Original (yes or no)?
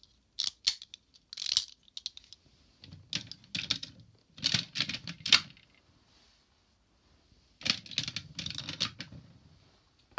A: yes